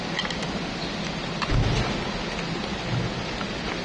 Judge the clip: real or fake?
real